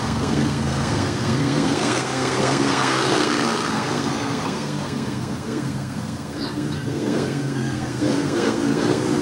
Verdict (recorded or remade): remade